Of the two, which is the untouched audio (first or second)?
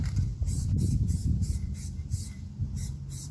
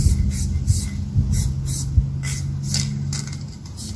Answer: second